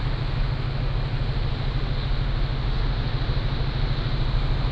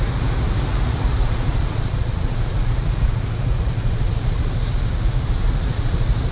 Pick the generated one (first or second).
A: second